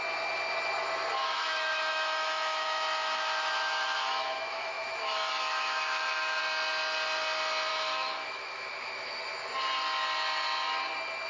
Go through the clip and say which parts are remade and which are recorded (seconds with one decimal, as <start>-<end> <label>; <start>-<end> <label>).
0.0-1.2 recorded; 1.2-6.4 remade; 6.4-7.7 recorded; 7.7-9.2 remade; 9.2-11.3 recorded